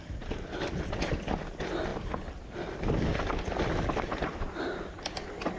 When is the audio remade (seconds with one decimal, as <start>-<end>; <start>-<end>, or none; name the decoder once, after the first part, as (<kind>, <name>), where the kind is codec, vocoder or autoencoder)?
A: none

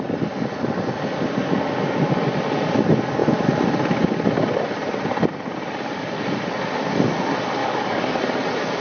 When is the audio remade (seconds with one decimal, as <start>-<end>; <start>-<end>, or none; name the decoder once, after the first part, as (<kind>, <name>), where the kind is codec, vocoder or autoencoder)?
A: 7.6-8.2 (codec, DAC)

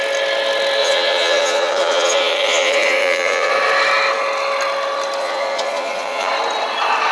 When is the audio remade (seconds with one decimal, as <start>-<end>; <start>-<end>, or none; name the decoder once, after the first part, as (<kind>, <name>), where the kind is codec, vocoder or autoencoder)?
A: 0.8-3.5 (vocoder, Vocos); 5.2-6.3